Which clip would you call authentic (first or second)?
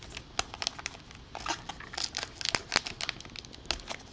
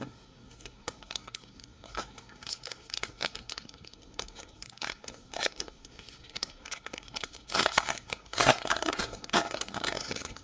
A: first